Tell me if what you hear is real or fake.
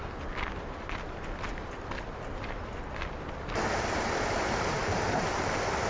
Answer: real